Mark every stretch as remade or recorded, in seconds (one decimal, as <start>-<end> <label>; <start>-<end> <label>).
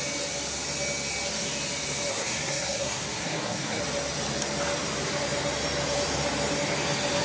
0.0-2.1 recorded; 2.1-3.8 remade; 3.8-7.2 recorded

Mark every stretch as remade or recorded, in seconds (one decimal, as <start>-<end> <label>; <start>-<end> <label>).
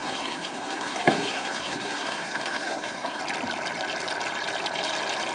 0.0-3.2 remade; 3.2-5.3 recorded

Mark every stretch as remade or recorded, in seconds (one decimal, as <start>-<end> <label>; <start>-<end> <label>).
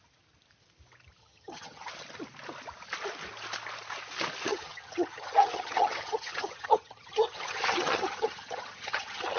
0.0-1.2 recorded; 1.2-1.9 remade; 1.9-4.5 recorded; 4.5-9.4 remade